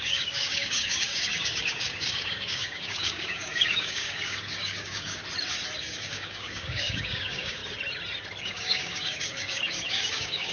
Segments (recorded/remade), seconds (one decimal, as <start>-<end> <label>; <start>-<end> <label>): 0.0-5.2 remade; 5.2-5.8 recorded; 5.8-7.6 remade; 7.6-8.4 recorded; 8.4-10.5 remade